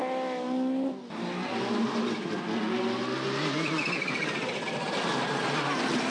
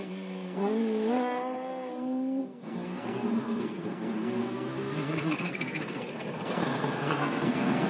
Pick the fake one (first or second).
second